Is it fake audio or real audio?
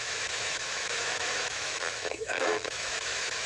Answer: fake